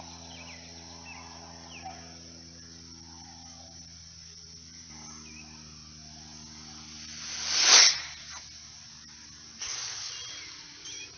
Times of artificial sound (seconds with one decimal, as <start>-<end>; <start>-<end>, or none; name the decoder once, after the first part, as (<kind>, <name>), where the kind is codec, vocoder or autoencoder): 9.6-10.1 (codec, HILCodec)